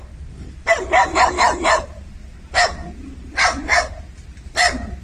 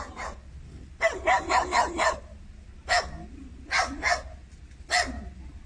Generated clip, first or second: first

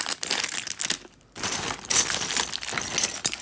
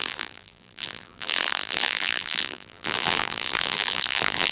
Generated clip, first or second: second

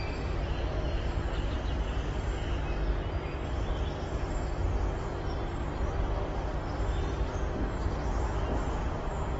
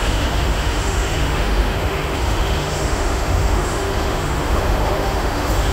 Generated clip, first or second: second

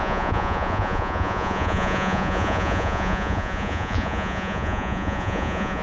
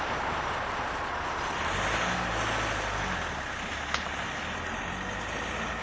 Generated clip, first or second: first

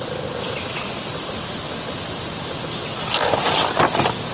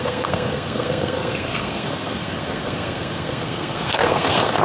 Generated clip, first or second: second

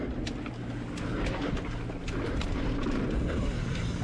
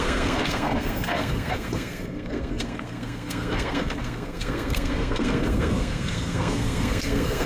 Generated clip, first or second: second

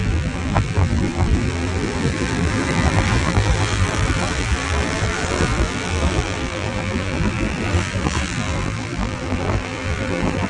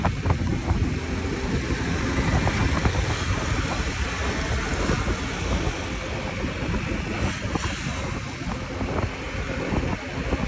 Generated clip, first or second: first